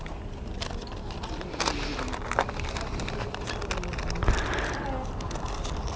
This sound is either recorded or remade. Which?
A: recorded